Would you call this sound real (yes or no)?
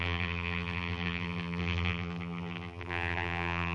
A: no